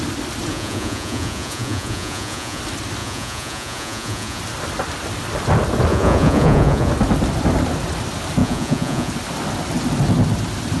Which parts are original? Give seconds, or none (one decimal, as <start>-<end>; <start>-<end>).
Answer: 0.0-0.5; 2.6-3.0; 4.4-5.9; 6.9-8.4; 9.1-10.8